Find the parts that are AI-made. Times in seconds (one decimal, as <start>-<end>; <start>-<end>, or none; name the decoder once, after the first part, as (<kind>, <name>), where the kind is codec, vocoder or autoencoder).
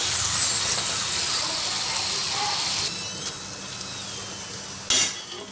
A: none